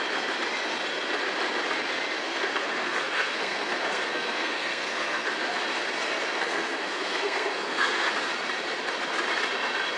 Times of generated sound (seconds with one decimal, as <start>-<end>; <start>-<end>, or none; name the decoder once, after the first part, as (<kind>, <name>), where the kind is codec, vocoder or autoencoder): 2.2-5.3 (codec, SNAC); 6.3-8.1